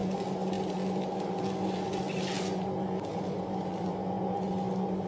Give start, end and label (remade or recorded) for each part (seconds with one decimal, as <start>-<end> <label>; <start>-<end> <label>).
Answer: 0.0-5.1 recorded